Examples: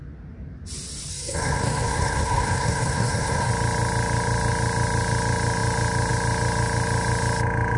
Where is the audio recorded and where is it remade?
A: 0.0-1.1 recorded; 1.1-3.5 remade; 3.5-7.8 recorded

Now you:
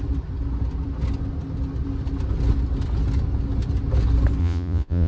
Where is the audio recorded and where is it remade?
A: 0.0-4.4 recorded; 4.4-5.1 remade

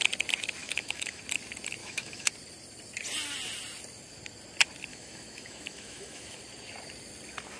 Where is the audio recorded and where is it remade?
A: 0.0-0.6 recorded; 0.6-1.2 remade; 1.2-1.8 recorded; 1.8-2.3 remade; 2.3-4.9 recorded; 4.9-6.4 remade; 6.4-7.6 recorded

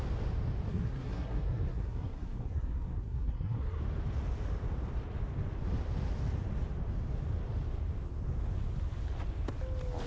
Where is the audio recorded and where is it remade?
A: 0.0-0.7 recorded; 0.7-3.8 remade; 3.8-10.1 recorded